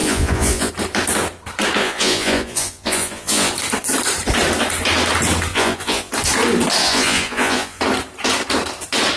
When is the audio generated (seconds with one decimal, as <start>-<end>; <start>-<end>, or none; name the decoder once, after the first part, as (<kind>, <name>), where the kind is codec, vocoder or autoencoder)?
0.0-0.7 (vocoder, Vocos); 1.8-3.5; 5.5-6.1; 6.8-7.8